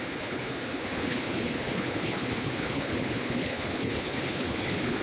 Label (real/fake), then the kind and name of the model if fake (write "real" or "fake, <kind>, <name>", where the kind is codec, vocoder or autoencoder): fake, codec, HILCodec